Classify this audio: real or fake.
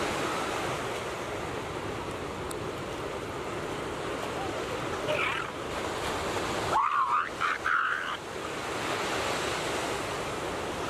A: real